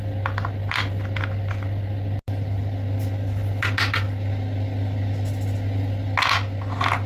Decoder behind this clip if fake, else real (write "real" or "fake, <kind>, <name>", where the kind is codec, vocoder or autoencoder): real